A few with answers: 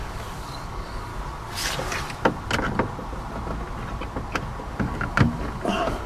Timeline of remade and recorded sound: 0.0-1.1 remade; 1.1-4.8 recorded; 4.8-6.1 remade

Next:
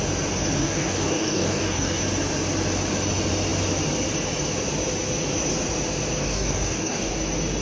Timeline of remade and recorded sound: 0.0-0.6 recorded; 0.6-2.0 remade; 2.0-6.2 recorded; 6.2-7.1 remade; 7.1-7.6 recorded

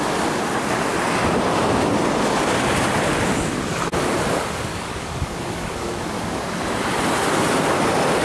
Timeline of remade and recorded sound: 0.0-4.7 recorded; 4.7-6.4 remade; 6.4-8.2 recorded

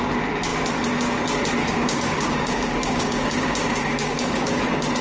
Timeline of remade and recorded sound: 0.0-1.6 recorded; 1.6-4.6 remade; 4.6-5.0 recorded

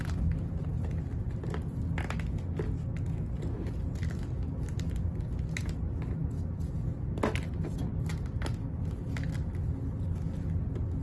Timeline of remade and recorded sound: 0.0-11.0 recorded

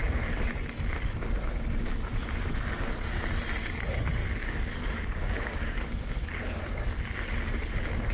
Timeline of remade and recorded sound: 0.0-4.2 recorded; 4.2-6.6 remade; 6.6-8.1 recorded

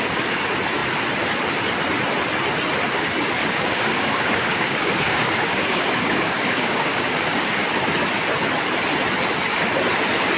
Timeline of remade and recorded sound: 0.0-3.4 recorded; 3.4-7.6 remade; 7.6-10.4 recorded

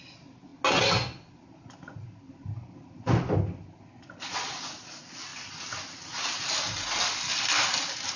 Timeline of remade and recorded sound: 0.0-8.2 recorded